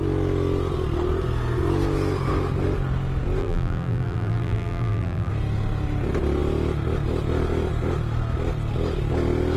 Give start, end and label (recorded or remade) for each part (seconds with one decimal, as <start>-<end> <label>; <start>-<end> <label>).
0.0-3.4 recorded; 3.4-5.3 remade; 5.3-9.6 recorded